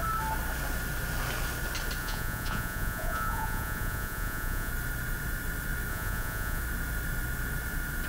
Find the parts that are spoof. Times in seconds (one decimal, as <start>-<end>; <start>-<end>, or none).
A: 2.0-4.7; 5.9-6.6